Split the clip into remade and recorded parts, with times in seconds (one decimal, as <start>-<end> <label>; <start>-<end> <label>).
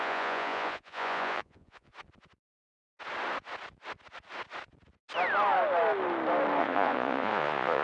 0.0-1.9 remade; 1.9-6.6 recorded; 6.6-7.8 remade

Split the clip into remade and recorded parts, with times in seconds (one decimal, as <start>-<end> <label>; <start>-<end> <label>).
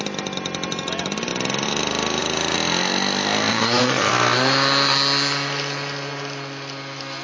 0.0-3.5 recorded; 3.5-4.1 remade; 4.1-7.2 recorded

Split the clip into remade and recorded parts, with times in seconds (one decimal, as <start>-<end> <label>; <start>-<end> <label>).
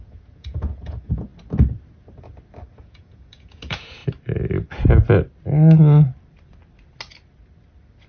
0.0-1.3 remade; 1.3-2.8 recorded; 2.8-4.0 remade; 4.0-8.1 recorded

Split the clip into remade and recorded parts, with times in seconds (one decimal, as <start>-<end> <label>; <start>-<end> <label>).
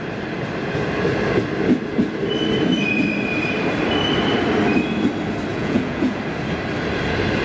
0.0-5.5 recorded; 5.5-6.2 remade; 6.2-7.4 recorded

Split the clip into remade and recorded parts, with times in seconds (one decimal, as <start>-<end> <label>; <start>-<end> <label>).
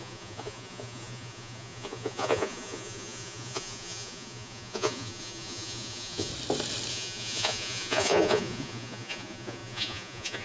0.0-6.3 remade; 6.3-6.9 recorded; 6.9-10.4 remade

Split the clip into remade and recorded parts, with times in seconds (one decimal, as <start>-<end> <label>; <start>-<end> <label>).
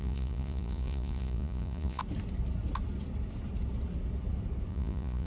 0.0-2.0 remade; 2.0-4.7 recorded; 4.7-5.3 remade